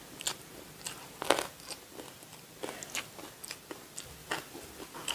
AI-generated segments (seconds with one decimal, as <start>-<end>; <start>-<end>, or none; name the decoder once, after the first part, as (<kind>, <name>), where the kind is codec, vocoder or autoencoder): none